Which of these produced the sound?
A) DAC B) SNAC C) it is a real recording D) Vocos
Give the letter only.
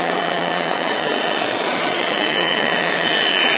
D